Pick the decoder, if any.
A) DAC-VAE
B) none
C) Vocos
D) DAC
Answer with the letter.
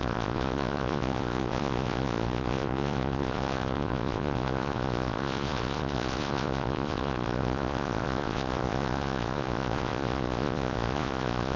C